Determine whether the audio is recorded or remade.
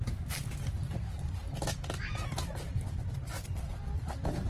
recorded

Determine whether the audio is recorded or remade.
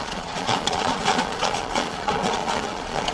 remade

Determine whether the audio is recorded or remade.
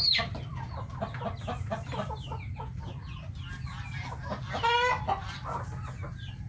recorded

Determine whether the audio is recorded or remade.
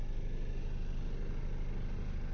recorded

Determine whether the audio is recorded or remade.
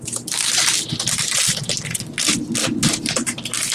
recorded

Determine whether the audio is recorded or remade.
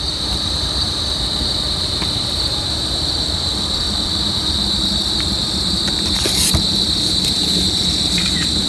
remade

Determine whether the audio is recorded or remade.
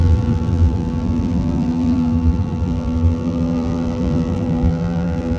remade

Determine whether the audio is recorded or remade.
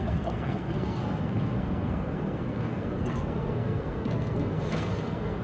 remade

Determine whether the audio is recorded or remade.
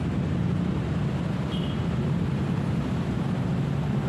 recorded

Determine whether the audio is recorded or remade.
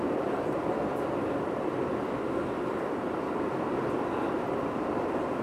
remade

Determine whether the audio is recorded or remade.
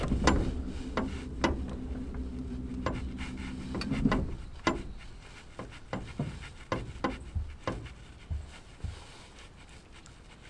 recorded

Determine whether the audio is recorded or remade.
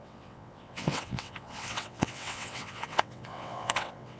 remade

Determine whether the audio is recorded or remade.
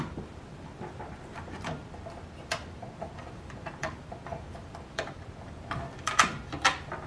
remade